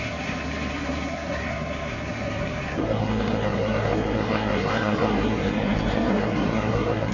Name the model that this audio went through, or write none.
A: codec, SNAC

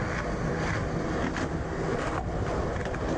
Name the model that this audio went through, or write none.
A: none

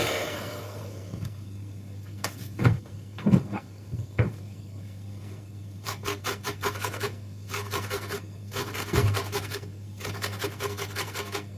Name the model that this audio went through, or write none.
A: codec, SNAC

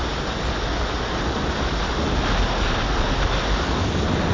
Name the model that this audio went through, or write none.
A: none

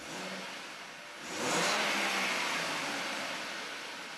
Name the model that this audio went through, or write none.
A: none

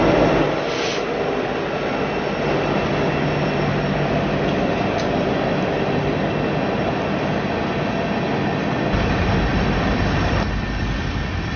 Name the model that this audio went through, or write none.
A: none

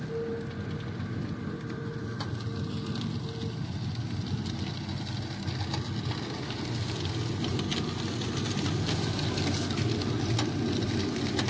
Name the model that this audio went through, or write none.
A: none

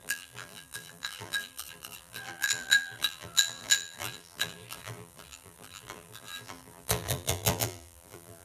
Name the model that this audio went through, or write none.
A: vocoder, BigVGAN v2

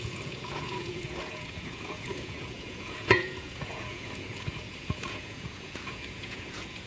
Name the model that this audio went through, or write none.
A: vocoder, Vocos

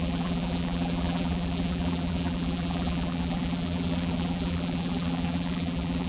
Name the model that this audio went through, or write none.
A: vocoder, BigVGAN v2